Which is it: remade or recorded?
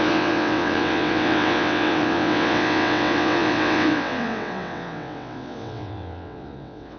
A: remade